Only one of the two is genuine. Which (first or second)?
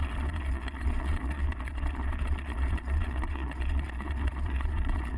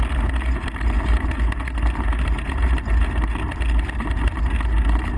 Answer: second